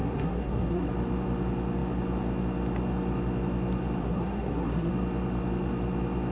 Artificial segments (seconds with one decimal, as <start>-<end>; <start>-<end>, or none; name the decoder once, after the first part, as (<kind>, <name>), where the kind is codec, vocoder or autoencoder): 0.0-0.9 (codec, SNAC); 4.0-4.9